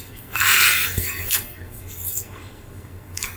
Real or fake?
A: fake